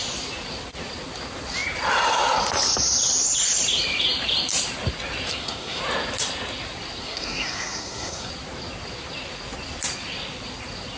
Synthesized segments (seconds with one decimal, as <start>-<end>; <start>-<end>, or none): 5.3-5.8; 7.0-8.3